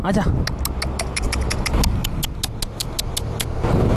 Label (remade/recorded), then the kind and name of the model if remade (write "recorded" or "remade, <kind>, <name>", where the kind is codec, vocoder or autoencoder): recorded